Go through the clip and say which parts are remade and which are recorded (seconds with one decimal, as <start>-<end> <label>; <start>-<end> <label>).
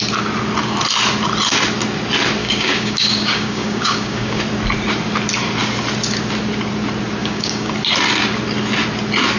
0.0-2.4 recorded; 2.4-4.4 remade; 4.4-7.2 recorded; 7.2-7.7 remade; 7.7-9.4 recorded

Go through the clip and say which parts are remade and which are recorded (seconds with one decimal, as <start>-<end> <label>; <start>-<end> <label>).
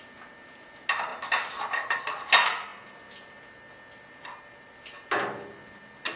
0.0-6.2 recorded